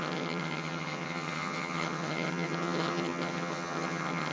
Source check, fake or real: fake